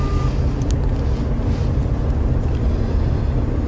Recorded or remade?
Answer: recorded